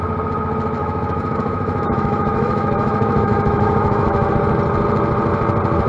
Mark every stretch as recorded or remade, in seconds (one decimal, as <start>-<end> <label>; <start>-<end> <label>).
0.0-0.8 recorded; 0.8-4.3 remade; 4.3-5.9 recorded